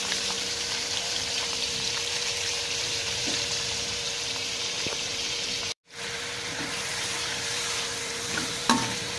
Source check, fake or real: fake